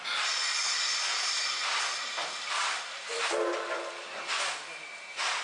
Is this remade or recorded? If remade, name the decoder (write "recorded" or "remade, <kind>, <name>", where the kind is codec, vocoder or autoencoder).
recorded